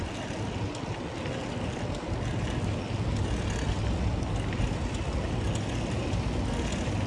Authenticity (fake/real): real